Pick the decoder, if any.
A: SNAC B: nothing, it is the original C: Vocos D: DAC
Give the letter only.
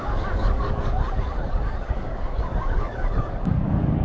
D